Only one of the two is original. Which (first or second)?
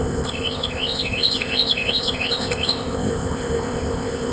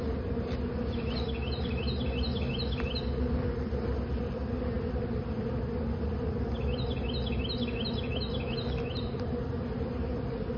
second